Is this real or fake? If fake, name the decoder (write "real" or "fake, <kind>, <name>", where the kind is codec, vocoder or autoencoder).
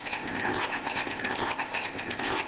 fake, codec, ZipCodec